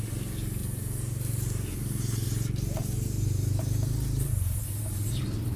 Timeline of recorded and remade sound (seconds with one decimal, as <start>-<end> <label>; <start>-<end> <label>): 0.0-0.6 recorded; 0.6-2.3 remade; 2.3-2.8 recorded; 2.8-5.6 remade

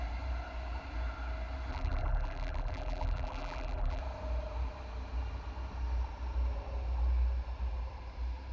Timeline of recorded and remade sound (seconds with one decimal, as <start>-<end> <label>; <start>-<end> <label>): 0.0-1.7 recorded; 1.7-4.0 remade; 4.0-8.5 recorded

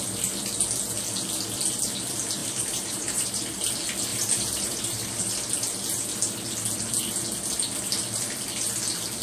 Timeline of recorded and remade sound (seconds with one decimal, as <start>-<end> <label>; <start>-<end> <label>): 0.0-2.4 recorded; 2.4-3.4 remade; 3.4-4.1 recorded; 4.1-5.2 remade; 5.2-9.2 recorded

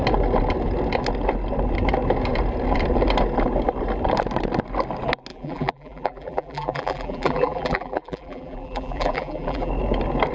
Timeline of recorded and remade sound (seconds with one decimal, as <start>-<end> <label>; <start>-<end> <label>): 0.0-5.3 recorded; 5.3-9.7 remade; 9.7-10.3 recorded

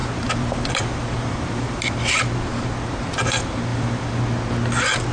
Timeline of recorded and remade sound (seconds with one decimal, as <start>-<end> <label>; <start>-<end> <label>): 0.0-2.2 remade; 2.2-3.7 recorded; 3.7-4.2 remade; 4.2-5.1 recorded

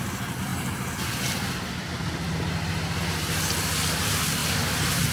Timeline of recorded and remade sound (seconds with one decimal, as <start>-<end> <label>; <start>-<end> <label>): 0.0-5.1 recorded